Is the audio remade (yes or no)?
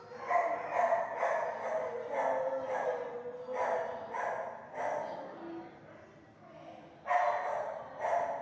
no